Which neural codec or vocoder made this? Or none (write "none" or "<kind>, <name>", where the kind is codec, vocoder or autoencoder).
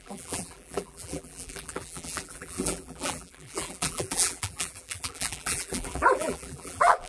vocoder, BigVGAN v2